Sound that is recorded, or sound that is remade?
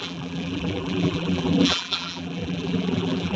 remade